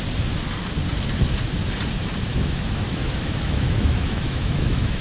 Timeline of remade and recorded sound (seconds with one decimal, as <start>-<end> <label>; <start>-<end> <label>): 0.0-2.3 recorded; 2.3-5.0 remade